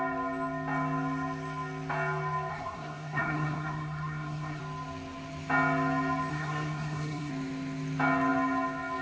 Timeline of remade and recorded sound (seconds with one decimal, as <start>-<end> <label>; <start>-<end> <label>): 0.0-2.5 recorded; 2.5-4.6 remade; 4.6-6.3 recorded; 6.3-7.3 remade; 7.3-9.0 recorded